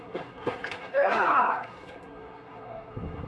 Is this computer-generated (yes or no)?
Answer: yes